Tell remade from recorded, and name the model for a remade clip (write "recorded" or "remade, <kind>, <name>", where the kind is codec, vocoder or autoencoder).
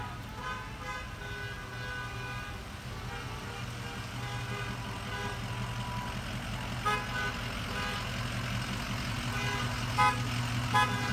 recorded